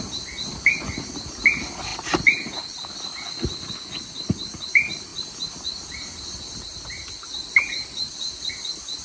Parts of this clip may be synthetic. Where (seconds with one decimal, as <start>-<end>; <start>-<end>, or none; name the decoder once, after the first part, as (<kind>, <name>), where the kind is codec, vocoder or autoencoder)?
none